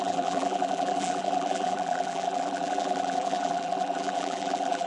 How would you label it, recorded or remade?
remade